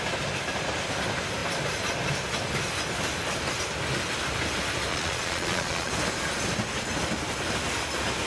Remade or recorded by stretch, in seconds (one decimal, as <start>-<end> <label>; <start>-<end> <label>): 0.0-4.9 recorded; 4.9-5.9 remade; 5.9-8.3 recorded